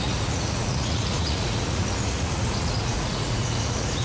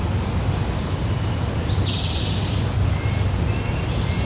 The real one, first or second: second